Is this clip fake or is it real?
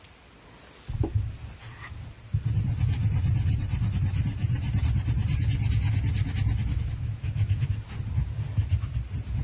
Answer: real